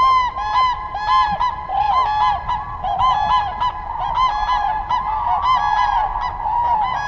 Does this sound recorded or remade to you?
recorded